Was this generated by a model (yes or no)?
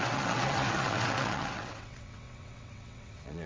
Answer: yes